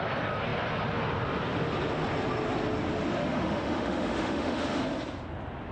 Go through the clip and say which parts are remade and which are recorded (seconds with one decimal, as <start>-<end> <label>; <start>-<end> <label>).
0.0-3.2 recorded; 3.2-4.8 remade; 4.8-5.7 recorded

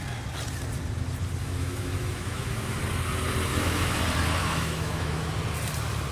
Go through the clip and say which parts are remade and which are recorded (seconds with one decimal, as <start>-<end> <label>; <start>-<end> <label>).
0.0-1.4 recorded; 1.4-2.8 remade; 2.8-3.5 recorded; 3.5-4.0 remade; 4.0-4.4 recorded; 4.4-5.3 remade; 5.3-6.1 recorded

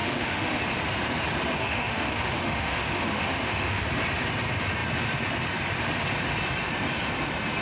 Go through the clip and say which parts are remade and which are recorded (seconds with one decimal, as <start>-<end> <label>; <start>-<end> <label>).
0.0-0.6 remade; 0.6-1.6 recorded; 1.6-3.8 remade; 3.8-7.6 recorded